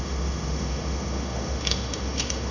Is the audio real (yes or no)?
no